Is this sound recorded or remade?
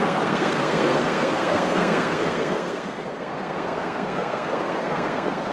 remade